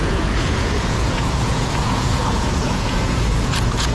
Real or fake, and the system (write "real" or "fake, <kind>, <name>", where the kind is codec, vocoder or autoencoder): fake, vocoder, Vocos